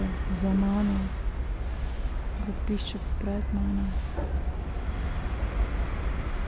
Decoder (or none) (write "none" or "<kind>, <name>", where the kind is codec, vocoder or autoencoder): none